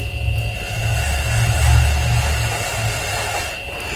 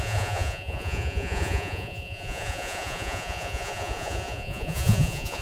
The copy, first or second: second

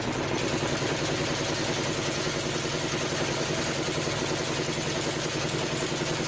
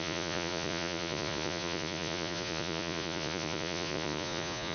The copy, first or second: second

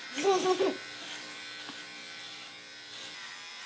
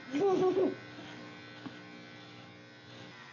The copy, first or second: first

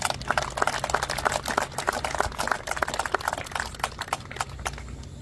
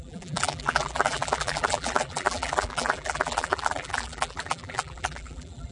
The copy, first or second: second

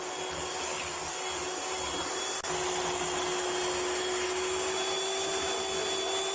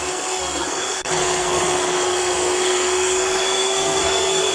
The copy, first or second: second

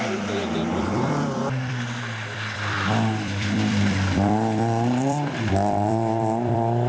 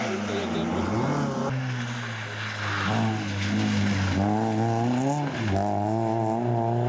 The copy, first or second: first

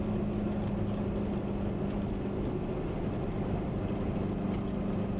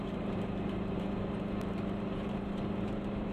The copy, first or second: second